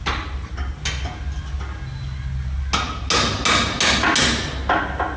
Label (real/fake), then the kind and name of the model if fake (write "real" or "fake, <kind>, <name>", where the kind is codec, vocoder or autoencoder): real